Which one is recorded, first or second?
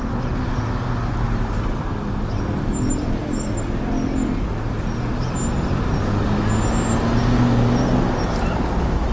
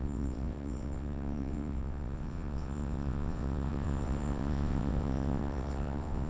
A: first